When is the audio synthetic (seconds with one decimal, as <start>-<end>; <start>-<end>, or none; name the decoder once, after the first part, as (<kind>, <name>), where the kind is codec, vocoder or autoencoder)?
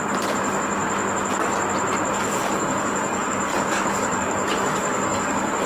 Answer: 2.2-5.7 (codec, DAC)